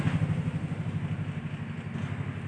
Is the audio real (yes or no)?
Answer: yes